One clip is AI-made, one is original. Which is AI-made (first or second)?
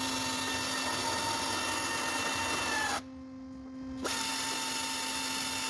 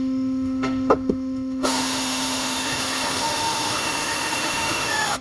second